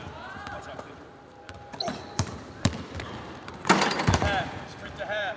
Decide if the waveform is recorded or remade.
remade